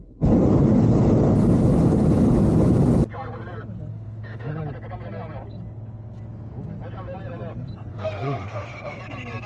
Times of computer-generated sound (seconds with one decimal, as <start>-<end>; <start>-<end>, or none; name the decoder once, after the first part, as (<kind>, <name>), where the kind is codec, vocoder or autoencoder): 3.9-4.5 (autoencoder, DAC-VAE); 7.9-9.0